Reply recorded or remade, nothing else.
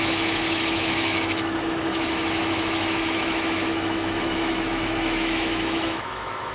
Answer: remade